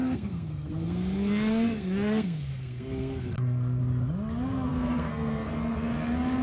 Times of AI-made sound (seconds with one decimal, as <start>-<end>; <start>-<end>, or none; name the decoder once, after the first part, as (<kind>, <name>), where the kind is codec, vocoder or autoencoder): 0.0-3.8 (codec, SNAC); 4.7-5.5